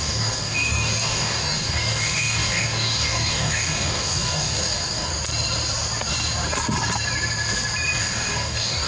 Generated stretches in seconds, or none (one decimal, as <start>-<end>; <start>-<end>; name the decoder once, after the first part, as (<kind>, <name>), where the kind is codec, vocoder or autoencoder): 0.0-5.1 (codec, DAC); 8.0-8.9